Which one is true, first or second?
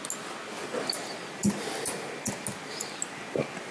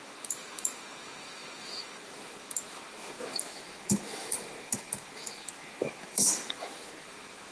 first